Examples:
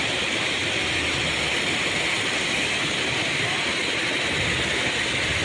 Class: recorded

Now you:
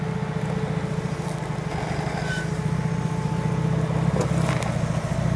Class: recorded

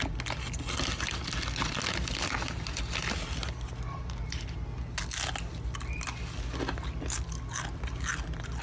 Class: recorded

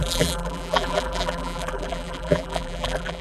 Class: remade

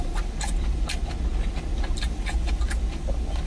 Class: recorded